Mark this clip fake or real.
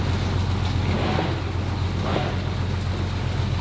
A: real